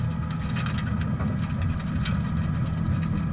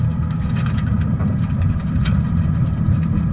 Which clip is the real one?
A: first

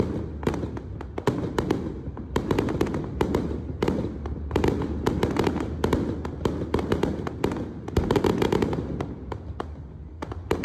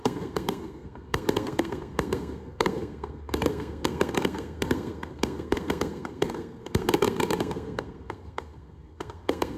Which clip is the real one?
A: first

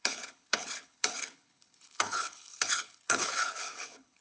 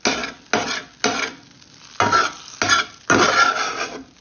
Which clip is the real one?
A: second